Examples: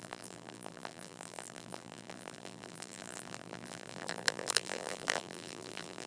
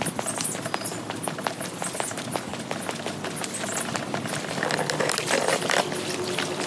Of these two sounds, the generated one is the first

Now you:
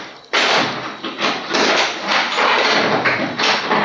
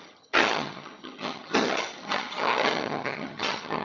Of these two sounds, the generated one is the second